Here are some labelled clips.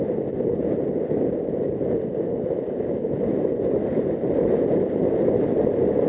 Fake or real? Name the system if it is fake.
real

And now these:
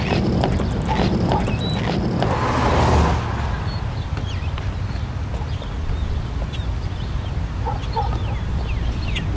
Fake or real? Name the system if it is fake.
real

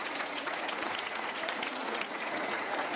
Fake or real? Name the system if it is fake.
fake, vocoder, Vocos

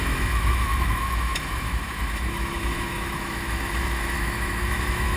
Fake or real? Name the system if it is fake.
fake, autoencoder, DAC-VAE